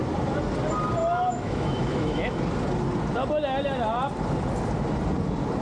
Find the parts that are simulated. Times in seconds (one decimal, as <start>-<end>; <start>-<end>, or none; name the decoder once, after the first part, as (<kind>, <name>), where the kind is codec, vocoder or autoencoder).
1.0-2.4 (autoencoder, DAC-VAE)